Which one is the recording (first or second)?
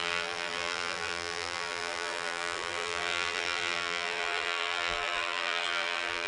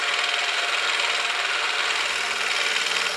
second